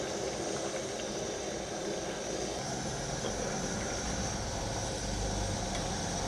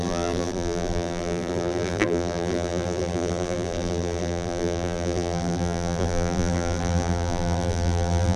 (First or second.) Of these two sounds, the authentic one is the first